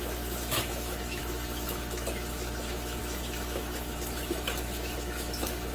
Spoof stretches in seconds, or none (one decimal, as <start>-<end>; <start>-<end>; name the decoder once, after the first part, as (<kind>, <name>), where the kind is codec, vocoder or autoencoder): 0.0-5.7 (autoencoder, DAC-VAE)